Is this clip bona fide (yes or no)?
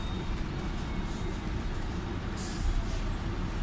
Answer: yes